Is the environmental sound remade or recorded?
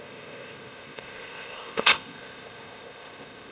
remade